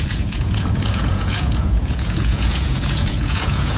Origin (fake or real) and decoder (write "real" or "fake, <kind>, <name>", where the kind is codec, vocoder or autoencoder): fake, vocoder, Vocos